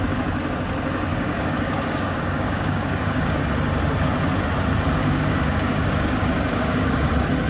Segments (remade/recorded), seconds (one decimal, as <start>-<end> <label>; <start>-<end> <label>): 0.0-1.1 recorded; 1.1-3.4 remade; 3.4-5.0 recorded; 5.0-7.1 remade; 7.1-7.5 recorded